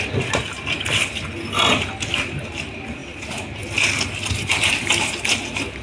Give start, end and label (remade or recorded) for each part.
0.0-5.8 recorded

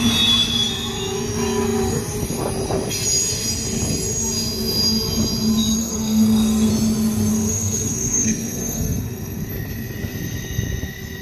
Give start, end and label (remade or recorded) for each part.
0.0-5.8 recorded; 5.8-6.7 remade; 6.7-7.3 recorded; 7.3-9.5 remade; 9.5-11.2 recorded

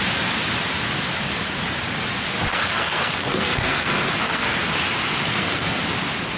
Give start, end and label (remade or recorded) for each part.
0.0-2.5 recorded; 2.5-4.7 remade; 4.7-5.3 recorded; 5.3-5.8 remade; 5.8-6.4 recorded

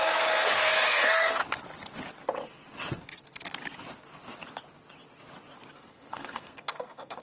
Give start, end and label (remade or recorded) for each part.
0.0-1.4 remade; 1.4-5.7 recorded; 5.7-7.2 remade

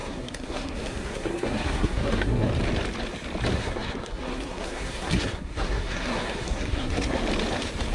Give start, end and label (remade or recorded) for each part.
0.0-2.5 remade; 2.5-3.5 recorded; 3.5-7.2 remade; 7.2-7.9 recorded